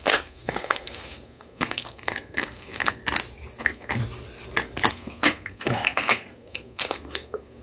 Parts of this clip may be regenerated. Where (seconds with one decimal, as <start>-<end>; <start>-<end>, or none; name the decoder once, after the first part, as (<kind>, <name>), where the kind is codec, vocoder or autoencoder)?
0.0-3.0 (codec, SNAC); 3.6-4.0; 4.9-7.6